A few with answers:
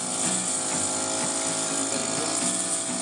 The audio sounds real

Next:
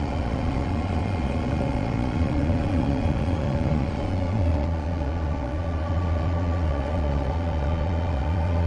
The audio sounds fake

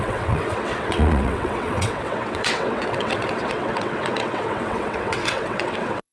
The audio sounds fake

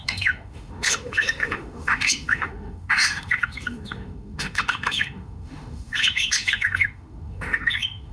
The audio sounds fake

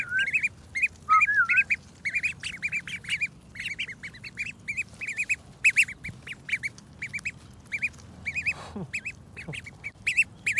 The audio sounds real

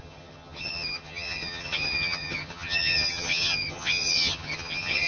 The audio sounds fake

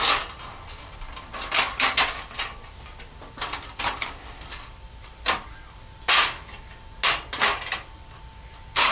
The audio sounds real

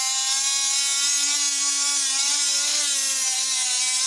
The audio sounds real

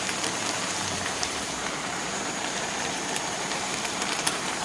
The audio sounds fake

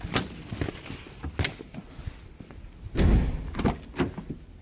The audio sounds real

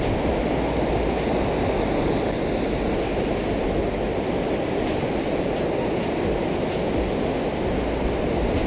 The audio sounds real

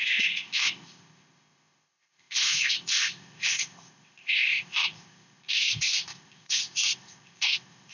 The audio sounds fake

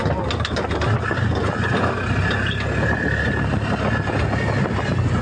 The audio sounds real